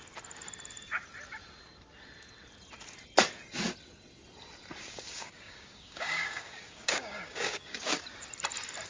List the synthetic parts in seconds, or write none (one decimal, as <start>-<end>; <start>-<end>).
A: 4.8-8.0